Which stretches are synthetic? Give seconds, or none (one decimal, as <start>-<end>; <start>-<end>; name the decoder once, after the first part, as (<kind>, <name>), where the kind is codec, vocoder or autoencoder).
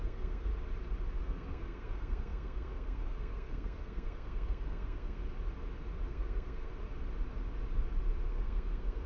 0.0-0.5 (codec, SNAC); 1.2-5.2; 6.1-6.7; 8.3-9.1